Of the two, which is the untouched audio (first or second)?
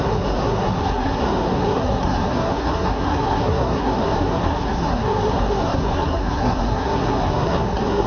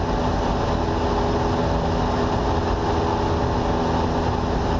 second